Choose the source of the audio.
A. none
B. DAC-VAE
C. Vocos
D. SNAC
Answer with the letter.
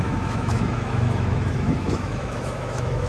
B